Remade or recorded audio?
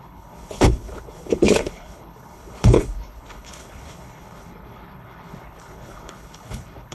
remade